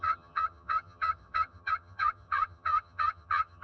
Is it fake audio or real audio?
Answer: fake